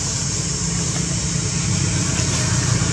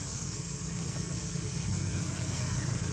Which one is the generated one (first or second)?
second